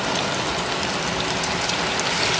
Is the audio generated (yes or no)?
no